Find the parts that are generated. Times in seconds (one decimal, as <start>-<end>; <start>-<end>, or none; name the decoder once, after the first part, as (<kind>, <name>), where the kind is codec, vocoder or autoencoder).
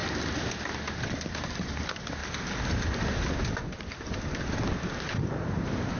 1.3-2.2 (vocoder, BigVGAN v2); 4.7-6.0